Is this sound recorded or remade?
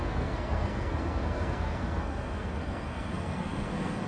remade